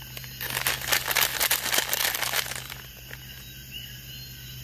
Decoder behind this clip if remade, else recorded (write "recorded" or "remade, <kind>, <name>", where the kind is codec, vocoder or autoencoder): recorded